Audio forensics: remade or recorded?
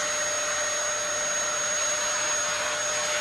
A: recorded